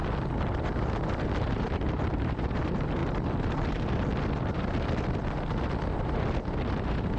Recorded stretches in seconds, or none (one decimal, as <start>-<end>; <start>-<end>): 0.0-0.9; 3.0-3.5; 4.1-7.2